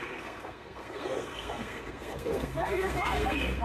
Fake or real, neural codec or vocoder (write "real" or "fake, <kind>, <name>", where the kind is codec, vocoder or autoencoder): fake, codec, SNAC